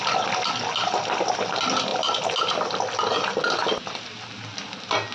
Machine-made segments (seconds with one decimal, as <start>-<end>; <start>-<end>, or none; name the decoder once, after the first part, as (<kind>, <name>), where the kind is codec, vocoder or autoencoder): none